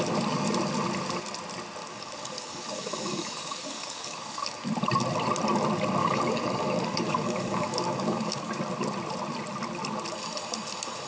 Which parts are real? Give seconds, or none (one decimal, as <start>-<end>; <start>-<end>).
0.0-1.8; 4.6-6.0; 8.5-11.1